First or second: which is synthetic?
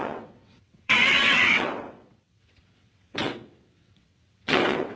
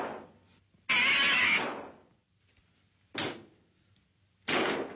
first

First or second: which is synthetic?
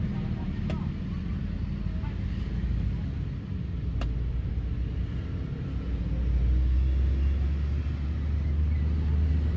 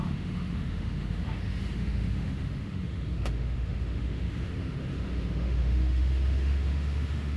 second